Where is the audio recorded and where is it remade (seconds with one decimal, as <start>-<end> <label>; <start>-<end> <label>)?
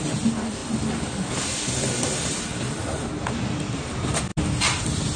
0.0-5.2 recorded